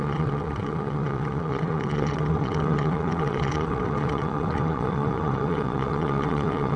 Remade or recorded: remade